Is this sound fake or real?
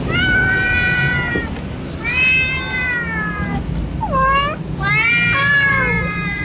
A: real